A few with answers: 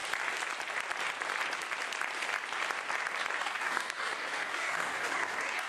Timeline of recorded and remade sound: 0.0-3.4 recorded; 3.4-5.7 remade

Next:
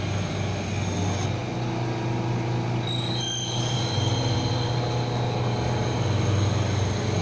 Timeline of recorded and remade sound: 0.0-7.2 recorded

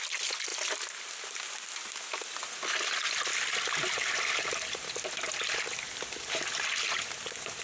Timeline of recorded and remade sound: 0.0-7.6 recorded

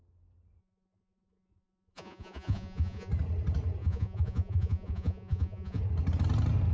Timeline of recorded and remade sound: 0.0-0.6 recorded; 0.6-3.1 remade; 3.1-3.8 recorded; 3.8-5.8 remade; 5.8-6.7 recorded

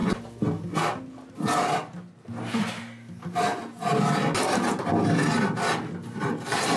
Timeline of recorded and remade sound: 0.0-6.8 recorded

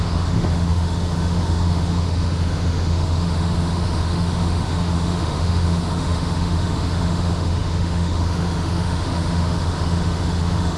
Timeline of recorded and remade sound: 0.0-10.8 remade